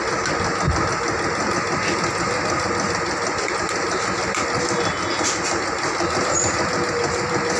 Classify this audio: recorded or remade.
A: recorded